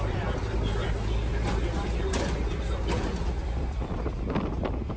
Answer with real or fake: real